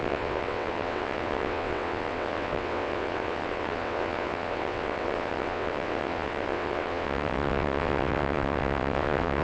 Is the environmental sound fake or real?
fake